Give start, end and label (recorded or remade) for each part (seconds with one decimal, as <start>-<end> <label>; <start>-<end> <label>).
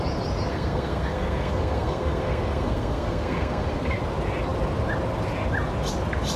0.0-0.5 recorded; 0.5-4.0 remade; 4.0-6.4 recorded